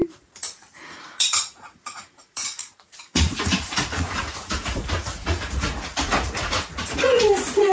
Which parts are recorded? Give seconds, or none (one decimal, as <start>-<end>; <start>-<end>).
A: none